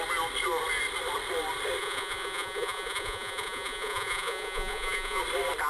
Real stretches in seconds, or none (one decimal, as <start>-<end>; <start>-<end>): 0.0-1.8; 5.2-5.7